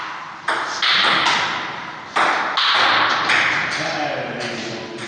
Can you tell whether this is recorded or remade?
recorded